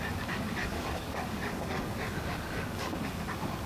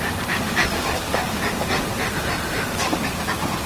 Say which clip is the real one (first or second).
second